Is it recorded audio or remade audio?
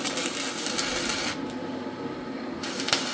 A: recorded